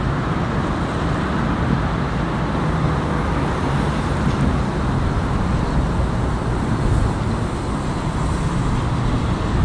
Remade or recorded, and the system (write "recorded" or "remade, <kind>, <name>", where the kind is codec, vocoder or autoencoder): recorded